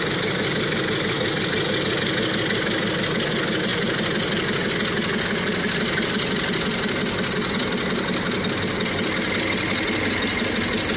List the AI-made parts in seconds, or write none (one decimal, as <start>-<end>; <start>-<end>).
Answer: none